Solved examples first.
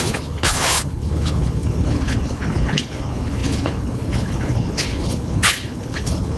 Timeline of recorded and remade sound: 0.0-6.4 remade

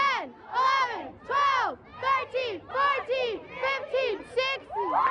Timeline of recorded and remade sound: 0.0-5.1 recorded

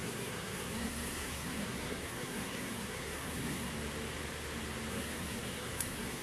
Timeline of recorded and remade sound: 0.0-3.7 remade; 3.7-4.9 recorded; 4.9-6.2 remade

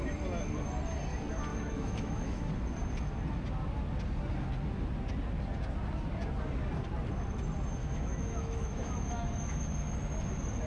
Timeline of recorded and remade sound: 0.0-1.5 recorded; 1.5-2.5 remade; 2.5-7.8 recorded; 7.8-9.7 remade; 9.7-10.7 recorded

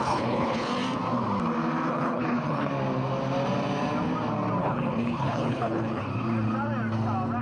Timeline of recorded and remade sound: 0.0-0.7 remade; 0.7-1.9 recorded; 1.9-2.7 remade; 2.7-4.6 recorded; 4.6-6.1 remade; 6.1-7.4 recorded

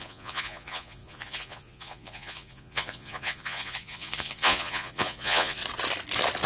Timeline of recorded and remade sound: 0.0-5.6 remade; 5.6-6.5 recorded

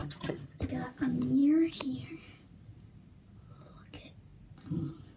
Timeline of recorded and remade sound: 0.0-0.6 remade; 0.6-5.2 recorded